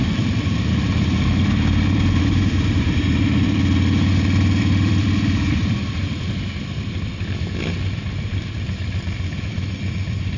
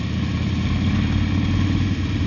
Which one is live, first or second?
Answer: second